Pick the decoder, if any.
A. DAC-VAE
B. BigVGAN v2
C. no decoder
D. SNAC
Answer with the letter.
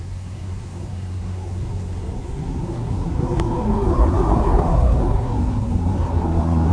D